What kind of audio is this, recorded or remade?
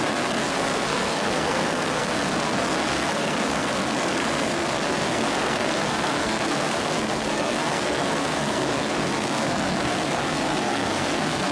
remade